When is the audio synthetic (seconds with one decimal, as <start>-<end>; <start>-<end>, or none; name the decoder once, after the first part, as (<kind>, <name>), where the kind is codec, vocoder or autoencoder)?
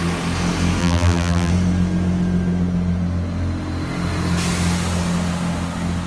0.8-1.5 (vocoder, BigVGAN v2)